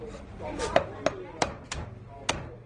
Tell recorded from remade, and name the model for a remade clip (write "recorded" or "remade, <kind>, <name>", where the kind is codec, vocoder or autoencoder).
recorded